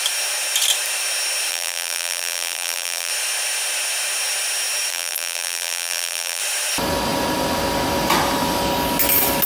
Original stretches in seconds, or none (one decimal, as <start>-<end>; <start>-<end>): 0.0-1.5; 3.1-4.9; 6.4-9.5

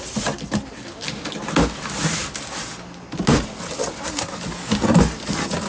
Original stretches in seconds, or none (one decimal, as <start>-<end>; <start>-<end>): 0.0-5.7

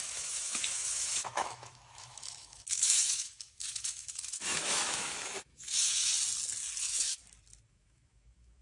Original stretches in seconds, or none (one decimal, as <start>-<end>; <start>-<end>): 6.1-6.8; 7.2-7.7

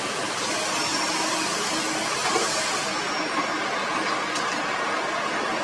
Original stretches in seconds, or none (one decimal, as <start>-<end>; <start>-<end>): 0.0-5.6

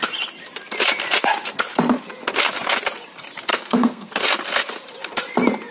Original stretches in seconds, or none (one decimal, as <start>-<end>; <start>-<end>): 0.0-3.5; 4.1-5.7

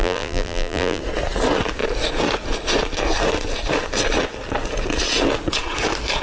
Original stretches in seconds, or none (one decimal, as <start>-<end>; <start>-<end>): 1.0-6.2